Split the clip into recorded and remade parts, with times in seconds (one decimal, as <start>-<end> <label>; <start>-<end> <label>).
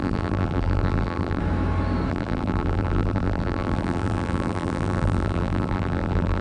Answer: 0.0-1.4 remade; 1.4-2.1 recorded; 2.1-6.4 remade